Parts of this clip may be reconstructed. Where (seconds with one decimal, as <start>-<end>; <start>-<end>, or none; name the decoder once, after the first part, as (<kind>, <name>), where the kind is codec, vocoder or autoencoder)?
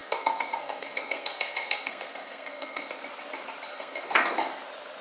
0.0-3.0 (codec, SNAC); 3.7-4.3